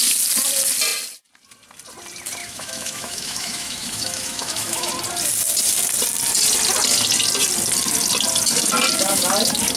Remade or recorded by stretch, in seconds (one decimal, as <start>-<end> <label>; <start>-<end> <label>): 0.0-2.4 recorded; 2.4-4.9 remade; 4.9-9.8 recorded